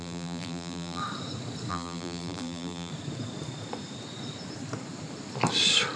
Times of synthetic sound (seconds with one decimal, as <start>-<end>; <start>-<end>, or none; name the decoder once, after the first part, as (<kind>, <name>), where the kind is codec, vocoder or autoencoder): 0.0-1.0 (vocoder, BigVGAN v2); 1.7-2.9